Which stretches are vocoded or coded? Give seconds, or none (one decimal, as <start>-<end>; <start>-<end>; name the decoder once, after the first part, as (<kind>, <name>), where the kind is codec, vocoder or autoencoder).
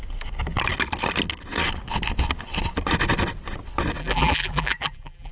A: 4.0-5.3 (vocoder, BigVGAN v2)